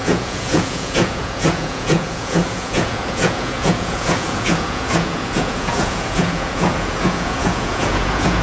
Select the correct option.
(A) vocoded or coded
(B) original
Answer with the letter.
A